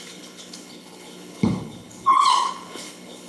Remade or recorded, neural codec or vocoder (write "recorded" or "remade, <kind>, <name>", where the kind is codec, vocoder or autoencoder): remade, codec, HILCodec